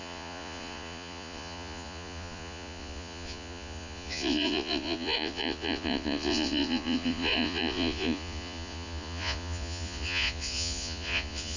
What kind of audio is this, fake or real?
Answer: fake